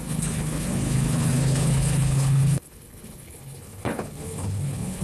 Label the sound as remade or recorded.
remade